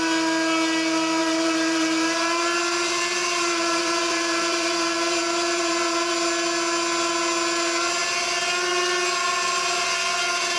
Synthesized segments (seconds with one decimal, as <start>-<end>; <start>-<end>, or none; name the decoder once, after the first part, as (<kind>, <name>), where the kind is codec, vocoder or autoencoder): 1.2-6.1 (vocoder, BigVGAN v2)